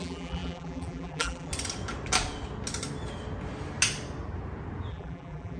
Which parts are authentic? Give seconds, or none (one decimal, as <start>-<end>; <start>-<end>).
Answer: 1.5-4.9